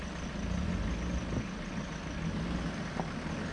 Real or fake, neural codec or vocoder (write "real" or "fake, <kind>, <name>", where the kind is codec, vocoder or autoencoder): real